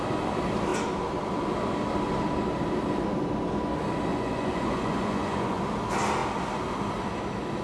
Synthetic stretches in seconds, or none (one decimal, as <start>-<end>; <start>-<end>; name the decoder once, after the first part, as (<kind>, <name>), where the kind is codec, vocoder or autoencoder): 4.1-5.6 (vocoder, Vocos)